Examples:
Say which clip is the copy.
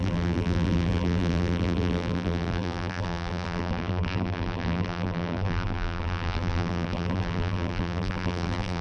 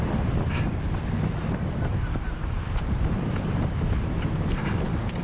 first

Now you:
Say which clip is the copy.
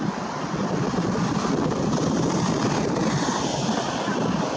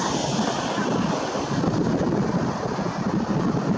first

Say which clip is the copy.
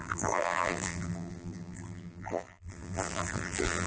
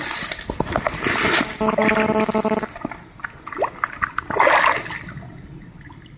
first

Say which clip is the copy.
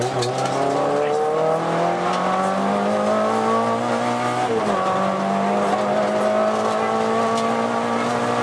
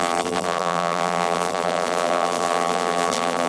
second